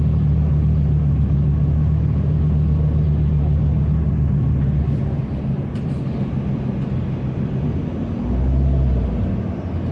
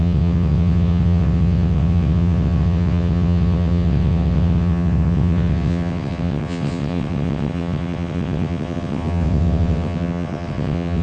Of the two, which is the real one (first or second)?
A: first